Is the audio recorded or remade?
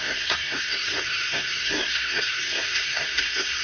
remade